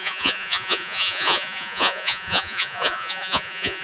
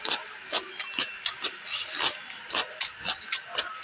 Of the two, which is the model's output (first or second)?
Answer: first